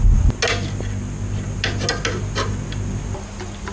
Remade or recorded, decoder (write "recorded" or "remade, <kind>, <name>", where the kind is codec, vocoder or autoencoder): recorded